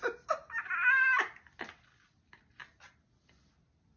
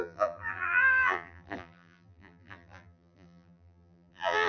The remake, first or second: second